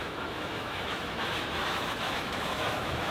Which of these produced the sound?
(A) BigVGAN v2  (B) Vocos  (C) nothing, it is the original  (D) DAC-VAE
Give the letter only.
D